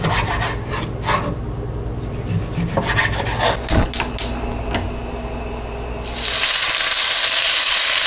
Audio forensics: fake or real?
real